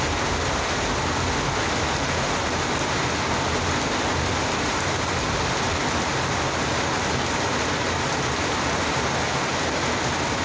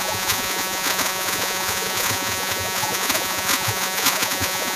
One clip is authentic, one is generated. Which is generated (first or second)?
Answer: second